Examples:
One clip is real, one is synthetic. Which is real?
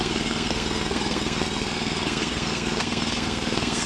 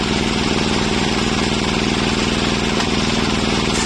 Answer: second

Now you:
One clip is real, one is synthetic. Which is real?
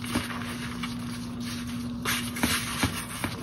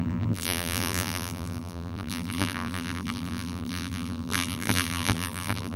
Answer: first